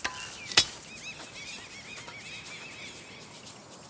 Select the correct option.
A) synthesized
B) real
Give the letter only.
B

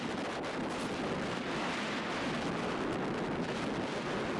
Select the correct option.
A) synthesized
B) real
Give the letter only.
B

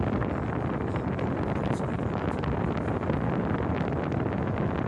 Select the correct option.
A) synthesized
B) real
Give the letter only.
B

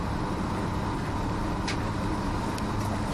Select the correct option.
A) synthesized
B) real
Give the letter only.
B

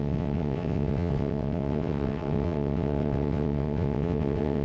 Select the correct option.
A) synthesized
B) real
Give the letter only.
A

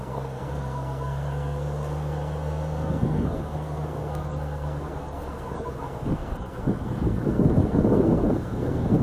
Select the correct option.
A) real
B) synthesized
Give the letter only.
B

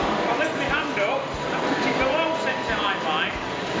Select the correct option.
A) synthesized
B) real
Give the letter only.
B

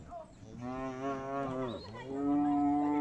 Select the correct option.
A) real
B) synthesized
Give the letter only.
A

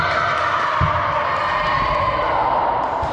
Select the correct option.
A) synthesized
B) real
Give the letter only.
B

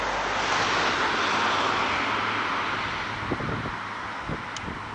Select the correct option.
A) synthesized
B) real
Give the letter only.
B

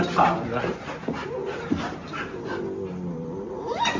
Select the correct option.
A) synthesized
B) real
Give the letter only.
B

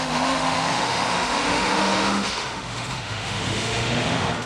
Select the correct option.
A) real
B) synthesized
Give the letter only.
B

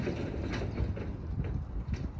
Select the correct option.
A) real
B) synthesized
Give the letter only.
A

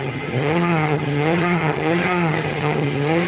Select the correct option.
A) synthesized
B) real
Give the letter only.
A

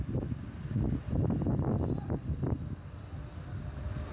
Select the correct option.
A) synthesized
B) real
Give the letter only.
B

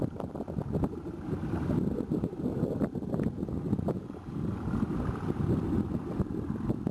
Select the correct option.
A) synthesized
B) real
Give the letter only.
A